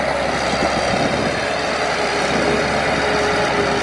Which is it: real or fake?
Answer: real